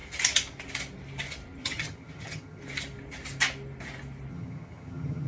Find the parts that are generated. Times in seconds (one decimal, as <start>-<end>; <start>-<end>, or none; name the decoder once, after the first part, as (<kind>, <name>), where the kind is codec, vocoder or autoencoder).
1.6-2.6 (vocoder, HiFi-GAN); 4.3-5.3